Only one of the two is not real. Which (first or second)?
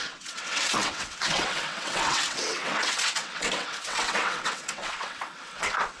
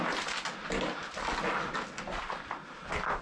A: first